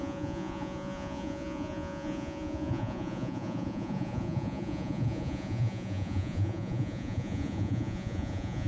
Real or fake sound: fake